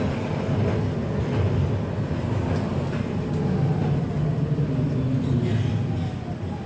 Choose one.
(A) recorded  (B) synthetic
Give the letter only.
A